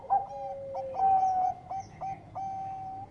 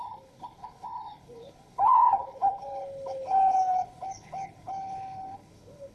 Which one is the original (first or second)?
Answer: first